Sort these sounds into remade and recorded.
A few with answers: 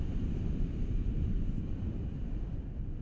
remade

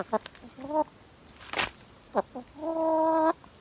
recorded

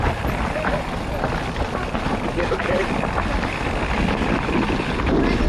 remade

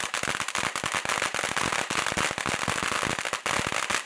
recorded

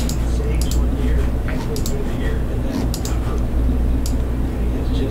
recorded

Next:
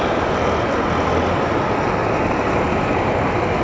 recorded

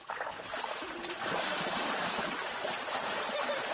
remade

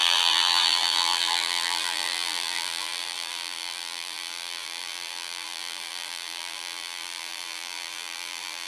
remade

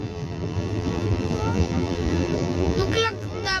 remade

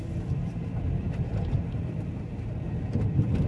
recorded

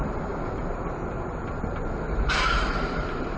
remade